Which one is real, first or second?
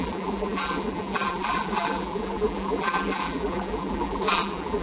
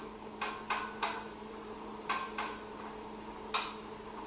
second